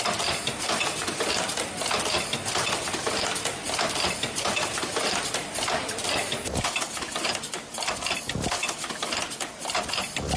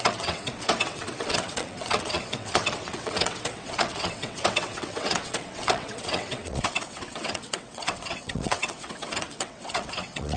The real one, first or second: first